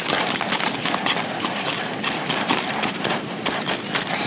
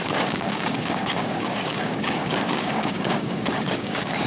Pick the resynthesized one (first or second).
second